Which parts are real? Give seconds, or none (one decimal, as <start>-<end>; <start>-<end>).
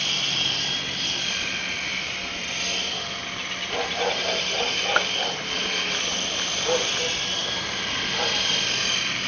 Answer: 4.9-6.0; 7.4-8.1